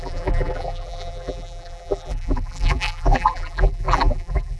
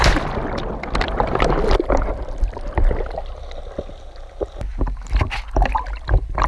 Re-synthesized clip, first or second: first